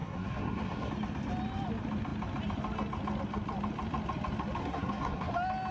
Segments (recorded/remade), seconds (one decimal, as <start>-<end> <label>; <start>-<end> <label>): 0.0-0.9 remade; 0.9-4.6 recorded; 4.6-5.3 remade; 5.3-5.7 recorded

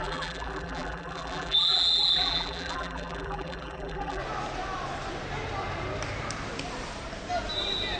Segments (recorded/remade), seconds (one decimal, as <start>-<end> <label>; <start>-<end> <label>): 0.0-4.2 remade; 4.2-8.0 recorded

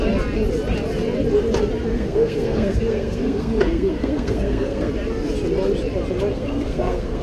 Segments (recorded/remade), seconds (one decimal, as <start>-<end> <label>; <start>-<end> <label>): 0.0-1.9 recorded; 1.9-4.9 remade; 4.9-6.3 recorded; 6.3-7.2 remade

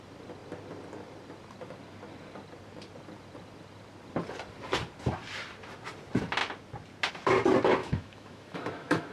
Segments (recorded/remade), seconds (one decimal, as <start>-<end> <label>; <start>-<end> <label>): 0.0-7.8 recorded; 7.8-9.1 remade

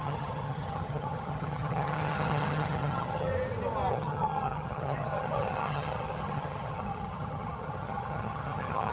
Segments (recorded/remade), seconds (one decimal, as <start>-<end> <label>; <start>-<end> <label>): 0.0-3.3 remade; 3.3-3.9 recorded; 3.9-8.9 remade

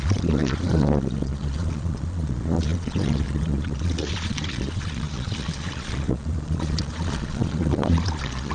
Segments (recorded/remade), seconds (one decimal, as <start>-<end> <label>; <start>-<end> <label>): 0.0-8.5 remade

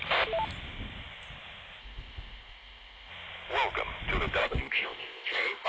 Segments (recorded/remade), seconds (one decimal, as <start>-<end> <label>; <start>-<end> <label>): 0.0-1.8 recorded; 1.8-3.1 remade; 3.1-4.4 recorded; 4.4-5.7 remade

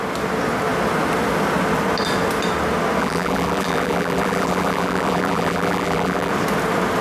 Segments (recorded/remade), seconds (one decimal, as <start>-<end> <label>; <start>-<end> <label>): 0.0-3.0 recorded; 3.0-6.3 remade; 6.3-7.0 recorded